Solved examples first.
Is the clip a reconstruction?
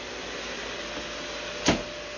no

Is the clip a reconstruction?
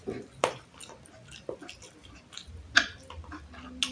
no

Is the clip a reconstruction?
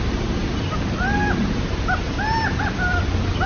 no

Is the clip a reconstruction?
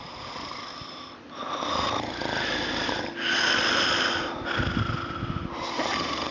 no